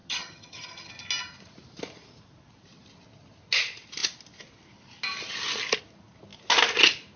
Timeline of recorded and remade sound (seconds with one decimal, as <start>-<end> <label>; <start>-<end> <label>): 0.0-0.9 remade; 0.9-7.2 recorded